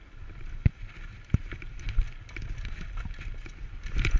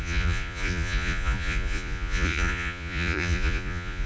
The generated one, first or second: second